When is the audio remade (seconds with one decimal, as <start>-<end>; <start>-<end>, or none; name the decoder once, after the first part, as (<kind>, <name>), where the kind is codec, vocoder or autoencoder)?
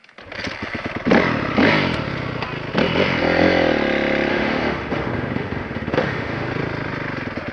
4.3-6.5 (autoencoder, DAC-VAE)